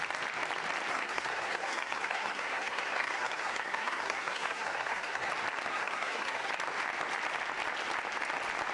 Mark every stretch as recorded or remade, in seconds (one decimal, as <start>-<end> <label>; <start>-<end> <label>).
0.0-0.9 recorded; 0.9-5.3 remade; 5.3-5.7 recorded; 5.7-6.5 remade; 6.5-8.7 recorded